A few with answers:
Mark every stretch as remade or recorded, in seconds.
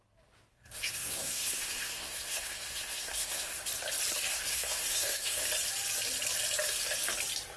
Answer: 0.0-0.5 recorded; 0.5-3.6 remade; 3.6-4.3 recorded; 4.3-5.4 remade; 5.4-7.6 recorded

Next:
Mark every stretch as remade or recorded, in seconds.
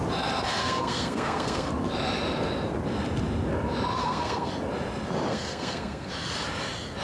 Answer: 0.0-0.6 recorded; 0.6-1.7 remade; 1.7-4.0 recorded; 4.0-4.5 remade; 4.5-5.3 recorded; 5.3-6.1 remade; 6.1-7.0 recorded